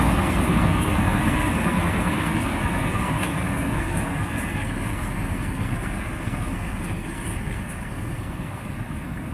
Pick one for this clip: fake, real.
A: fake